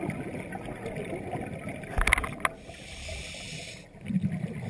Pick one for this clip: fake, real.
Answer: real